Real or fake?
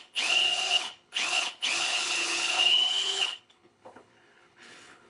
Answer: fake